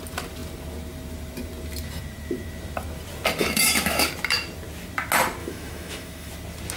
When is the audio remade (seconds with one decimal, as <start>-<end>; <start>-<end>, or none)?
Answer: 3.4-4.1; 5.4-6.3